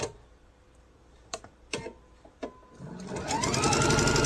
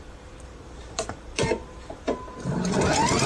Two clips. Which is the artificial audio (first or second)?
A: second